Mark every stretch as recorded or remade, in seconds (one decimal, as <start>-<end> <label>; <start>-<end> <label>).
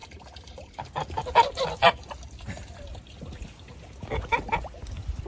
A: 0.0-3.2 remade; 3.2-5.3 recorded